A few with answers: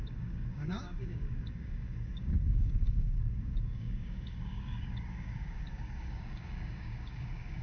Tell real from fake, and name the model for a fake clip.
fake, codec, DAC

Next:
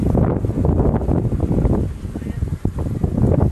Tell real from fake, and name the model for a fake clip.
real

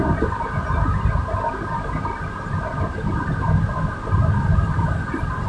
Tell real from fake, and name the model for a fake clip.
real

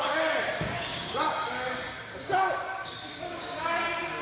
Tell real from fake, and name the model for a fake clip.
fake, codec, DAC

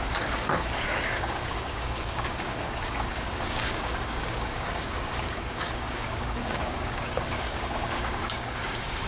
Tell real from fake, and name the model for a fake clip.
fake, codec, DAC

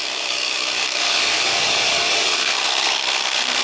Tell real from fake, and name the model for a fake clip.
fake, codec, DAC